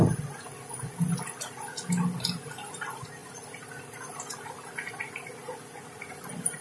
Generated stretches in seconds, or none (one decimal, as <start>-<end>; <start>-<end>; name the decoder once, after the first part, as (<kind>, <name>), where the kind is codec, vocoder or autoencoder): none